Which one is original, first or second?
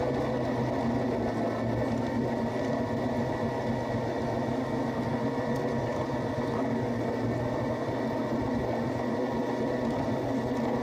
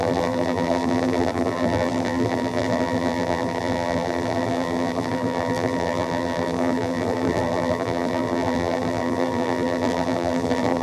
first